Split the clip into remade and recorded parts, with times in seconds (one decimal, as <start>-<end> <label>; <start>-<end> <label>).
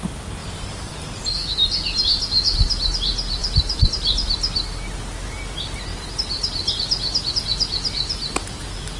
0.0-0.4 recorded; 0.4-1.0 remade; 1.0-9.0 recorded